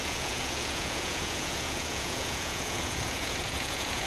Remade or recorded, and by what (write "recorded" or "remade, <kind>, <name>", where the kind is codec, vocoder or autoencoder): remade, vocoder, Vocos